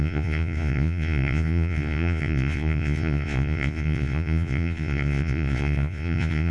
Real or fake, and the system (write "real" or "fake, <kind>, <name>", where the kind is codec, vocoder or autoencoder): fake, vocoder, Vocos